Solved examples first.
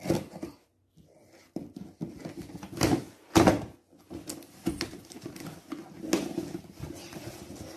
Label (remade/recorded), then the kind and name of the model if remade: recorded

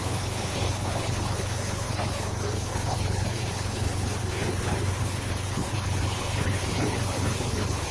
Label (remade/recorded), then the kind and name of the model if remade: remade, codec, HILCodec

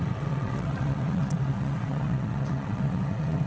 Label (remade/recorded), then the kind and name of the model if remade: remade, vocoder, WaveNeXt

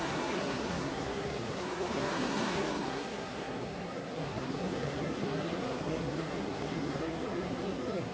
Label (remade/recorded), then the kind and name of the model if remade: remade, codec, SNAC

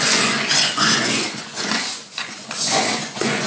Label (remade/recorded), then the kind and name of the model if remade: remade, vocoder, Vocos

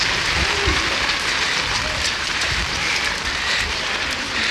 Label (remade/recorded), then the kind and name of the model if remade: remade, vocoder, BigVGAN v2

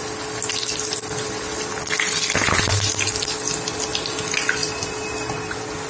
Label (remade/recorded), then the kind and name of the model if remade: recorded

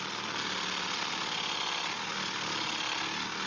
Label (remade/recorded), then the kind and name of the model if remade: recorded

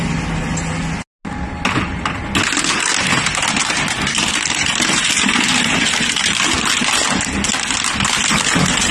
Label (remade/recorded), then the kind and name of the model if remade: recorded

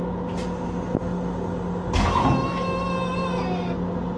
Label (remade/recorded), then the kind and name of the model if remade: recorded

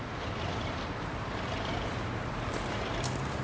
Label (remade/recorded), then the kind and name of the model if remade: remade, vocoder, BigVGAN v2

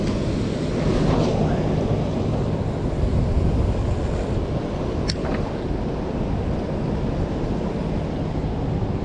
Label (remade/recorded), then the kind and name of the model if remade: recorded